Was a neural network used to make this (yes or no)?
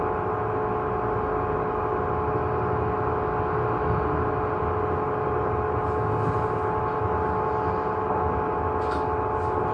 no